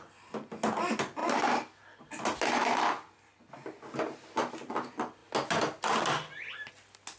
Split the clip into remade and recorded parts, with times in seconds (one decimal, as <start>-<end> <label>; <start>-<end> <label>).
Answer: 0.0-7.2 recorded